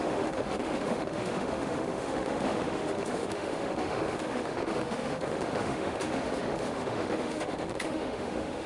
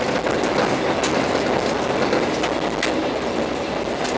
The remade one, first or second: first